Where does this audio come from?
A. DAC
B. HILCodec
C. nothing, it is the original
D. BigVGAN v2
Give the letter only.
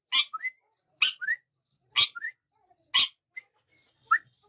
C